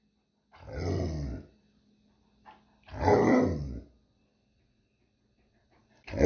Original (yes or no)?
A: yes